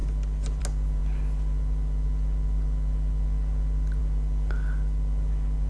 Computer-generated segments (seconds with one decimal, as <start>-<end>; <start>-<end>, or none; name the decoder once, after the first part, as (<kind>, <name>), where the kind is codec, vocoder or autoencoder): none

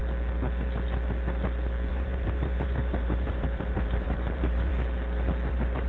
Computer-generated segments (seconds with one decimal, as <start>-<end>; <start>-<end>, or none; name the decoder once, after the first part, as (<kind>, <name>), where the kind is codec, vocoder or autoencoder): 1.9-4.7 (vocoder, BigVGAN v2); 5.5-5.9

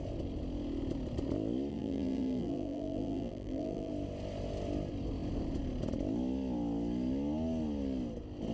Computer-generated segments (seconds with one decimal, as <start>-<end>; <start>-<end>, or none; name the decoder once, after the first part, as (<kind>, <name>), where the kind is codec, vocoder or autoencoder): 1.7-3.9 (vocoder, BigVGAN v2)